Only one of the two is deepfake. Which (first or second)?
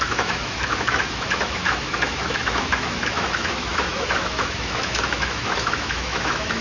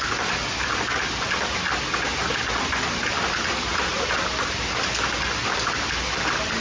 first